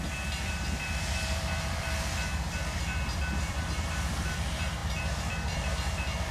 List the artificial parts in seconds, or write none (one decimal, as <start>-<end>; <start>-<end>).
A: 0.0-6.3